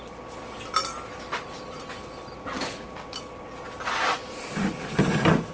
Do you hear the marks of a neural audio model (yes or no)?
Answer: no